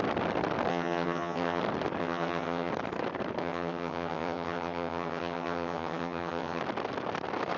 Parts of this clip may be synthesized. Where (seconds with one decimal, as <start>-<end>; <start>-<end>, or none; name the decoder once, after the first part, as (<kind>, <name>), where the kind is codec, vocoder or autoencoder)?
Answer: 0.7-1.6 (vocoder, HiFi-GAN); 2.0-2.7; 3.4-6.6